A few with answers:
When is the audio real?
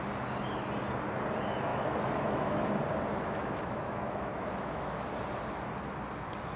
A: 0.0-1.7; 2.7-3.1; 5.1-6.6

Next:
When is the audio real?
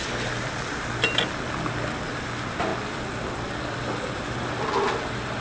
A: 0.0-5.4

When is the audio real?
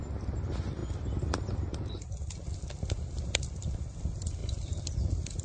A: 0.0-5.4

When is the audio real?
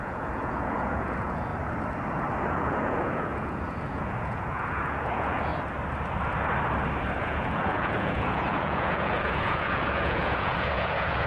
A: 1.5-2.5; 5.5-7.2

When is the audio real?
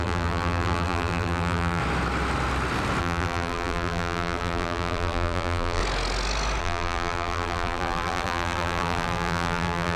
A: 1.8-3.0; 5.8-6.6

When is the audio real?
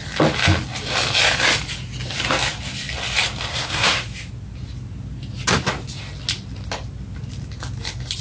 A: 0.0-3.5; 4.3-8.2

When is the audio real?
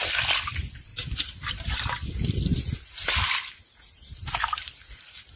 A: 0.0-0.9; 1.5-2.0; 3.5-4.1; 5.0-5.4